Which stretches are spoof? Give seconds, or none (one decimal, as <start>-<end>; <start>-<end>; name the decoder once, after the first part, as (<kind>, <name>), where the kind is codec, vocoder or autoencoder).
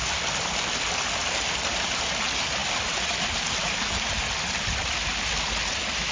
none